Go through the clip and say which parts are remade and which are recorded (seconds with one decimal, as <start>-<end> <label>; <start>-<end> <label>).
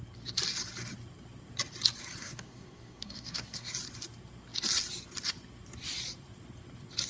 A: 0.0-2.2 recorded; 2.2-3.7 remade; 3.7-7.1 recorded